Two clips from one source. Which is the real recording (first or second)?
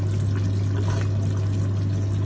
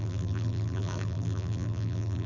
first